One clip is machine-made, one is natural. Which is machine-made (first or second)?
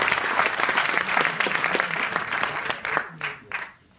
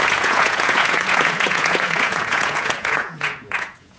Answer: second